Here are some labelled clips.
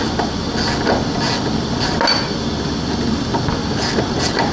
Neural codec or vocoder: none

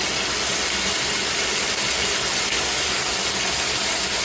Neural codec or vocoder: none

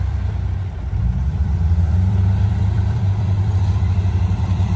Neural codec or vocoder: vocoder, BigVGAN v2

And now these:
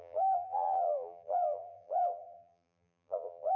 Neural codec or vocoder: vocoder, BigVGAN v2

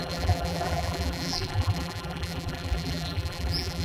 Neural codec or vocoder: vocoder, BigVGAN v2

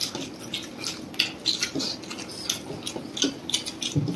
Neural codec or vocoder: none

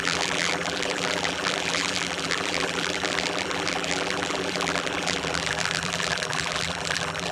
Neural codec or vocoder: vocoder, BigVGAN v2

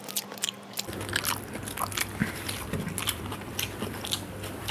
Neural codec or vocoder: none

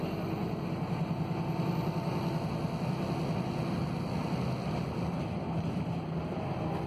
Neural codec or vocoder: none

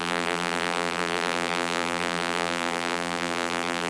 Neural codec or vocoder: vocoder, BigVGAN v2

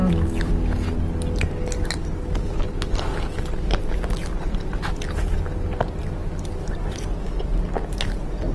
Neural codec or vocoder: none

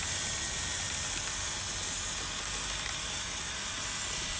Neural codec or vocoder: none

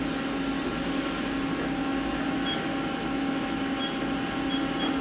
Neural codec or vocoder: none